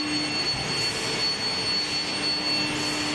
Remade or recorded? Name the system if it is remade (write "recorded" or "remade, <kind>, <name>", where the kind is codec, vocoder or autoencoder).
recorded